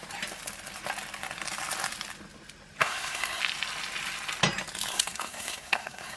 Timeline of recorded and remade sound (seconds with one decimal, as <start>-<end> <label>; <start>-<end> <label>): 0.0-2.8 recorded; 2.8-3.4 remade; 3.4-4.9 recorded; 4.9-6.2 remade